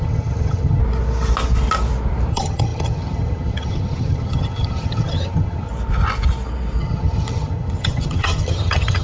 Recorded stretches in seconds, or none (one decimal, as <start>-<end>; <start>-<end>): 0.8-2.3; 5.7-6.8